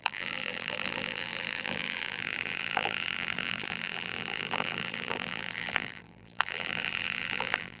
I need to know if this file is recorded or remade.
remade